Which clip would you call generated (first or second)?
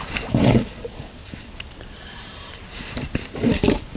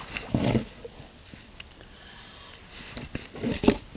first